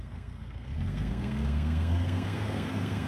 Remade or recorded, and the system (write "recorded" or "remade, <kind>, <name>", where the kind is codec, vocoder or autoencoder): remade, codec, SNAC